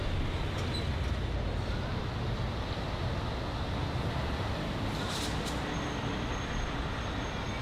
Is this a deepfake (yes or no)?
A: no